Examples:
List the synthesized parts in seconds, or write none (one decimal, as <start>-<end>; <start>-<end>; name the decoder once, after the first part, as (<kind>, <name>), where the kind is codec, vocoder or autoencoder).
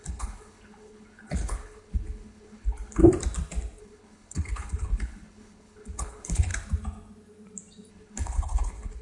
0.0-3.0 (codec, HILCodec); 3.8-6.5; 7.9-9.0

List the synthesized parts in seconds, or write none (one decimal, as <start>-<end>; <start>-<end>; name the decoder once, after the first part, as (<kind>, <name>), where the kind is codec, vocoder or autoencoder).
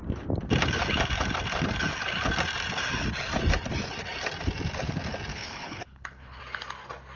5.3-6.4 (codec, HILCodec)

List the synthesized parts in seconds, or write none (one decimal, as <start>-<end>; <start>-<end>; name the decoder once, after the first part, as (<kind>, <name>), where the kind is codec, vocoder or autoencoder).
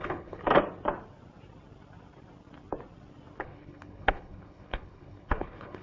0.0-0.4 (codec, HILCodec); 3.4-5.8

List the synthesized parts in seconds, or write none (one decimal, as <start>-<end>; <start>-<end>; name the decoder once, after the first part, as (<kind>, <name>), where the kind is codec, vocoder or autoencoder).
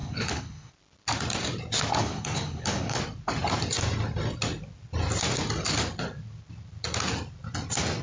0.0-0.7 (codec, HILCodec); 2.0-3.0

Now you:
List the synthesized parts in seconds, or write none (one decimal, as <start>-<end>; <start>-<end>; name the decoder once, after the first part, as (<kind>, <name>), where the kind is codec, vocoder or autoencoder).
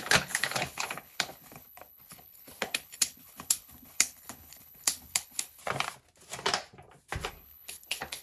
0.0-5.6 (codec, HILCodec); 7.3-8.2